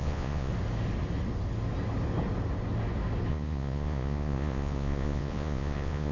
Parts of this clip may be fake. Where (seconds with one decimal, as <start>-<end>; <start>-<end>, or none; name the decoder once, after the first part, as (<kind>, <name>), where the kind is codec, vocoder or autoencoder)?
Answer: 0.0-0.5 (vocoder, Vocos); 3.3-6.1